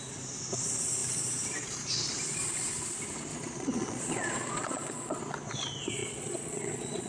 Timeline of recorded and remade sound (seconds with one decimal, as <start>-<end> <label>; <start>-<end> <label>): 0.0-3.3 recorded; 3.3-5.2 remade; 5.2-6.0 recorded; 6.0-7.1 remade